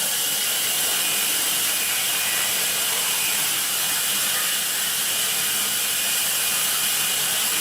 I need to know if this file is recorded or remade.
recorded